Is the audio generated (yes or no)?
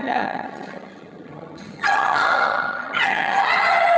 yes